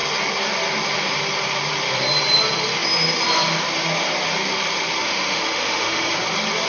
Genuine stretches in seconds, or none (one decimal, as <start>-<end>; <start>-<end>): 0.0-5.0; 6.1-6.7